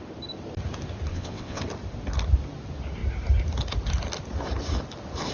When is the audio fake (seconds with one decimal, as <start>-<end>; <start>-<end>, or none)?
1.1-1.6